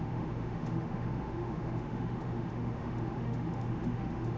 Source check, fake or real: fake